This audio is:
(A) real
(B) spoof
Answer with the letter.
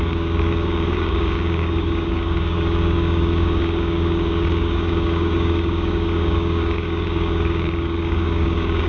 B